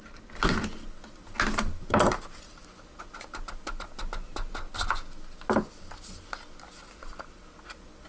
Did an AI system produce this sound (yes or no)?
no